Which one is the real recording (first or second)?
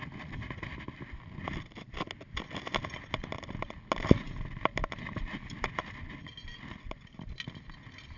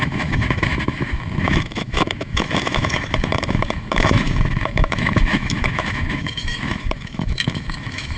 first